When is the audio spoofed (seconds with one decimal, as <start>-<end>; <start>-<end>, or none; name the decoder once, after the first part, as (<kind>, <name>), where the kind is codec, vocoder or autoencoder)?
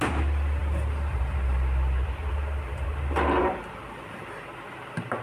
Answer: none